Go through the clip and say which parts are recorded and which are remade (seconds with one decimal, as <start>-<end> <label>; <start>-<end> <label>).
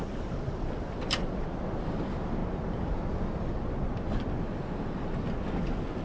0.0-6.0 recorded